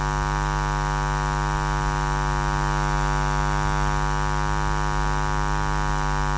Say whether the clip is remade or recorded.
recorded